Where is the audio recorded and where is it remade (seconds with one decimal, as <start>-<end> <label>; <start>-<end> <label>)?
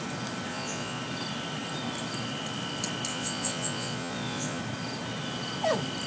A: 0.0-0.5 recorded; 0.5-1.0 remade; 1.0-3.1 recorded; 3.1-4.6 remade; 4.6-6.1 recorded